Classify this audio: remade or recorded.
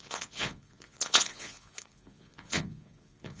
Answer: remade